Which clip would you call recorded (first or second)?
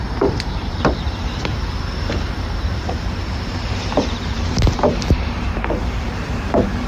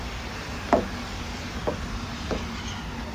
second